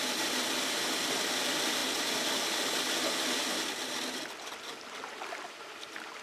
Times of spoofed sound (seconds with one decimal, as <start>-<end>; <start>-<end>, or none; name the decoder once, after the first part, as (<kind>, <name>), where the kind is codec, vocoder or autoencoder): none